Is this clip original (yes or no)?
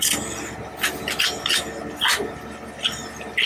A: yes